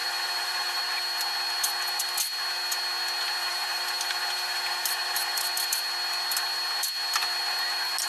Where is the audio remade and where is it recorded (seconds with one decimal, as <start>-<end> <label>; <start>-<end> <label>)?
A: 0.0-0.8 remade; 0.8-3.4 recorded; 3.4-5.5 remade; 5.5-8.1 recorded